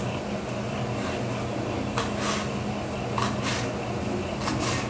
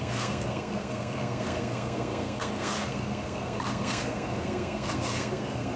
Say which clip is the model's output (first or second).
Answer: second